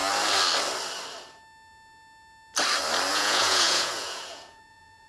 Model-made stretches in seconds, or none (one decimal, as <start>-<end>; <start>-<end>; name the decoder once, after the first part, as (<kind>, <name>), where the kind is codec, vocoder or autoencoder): 3.1-5.1 (vocoder, Vocos)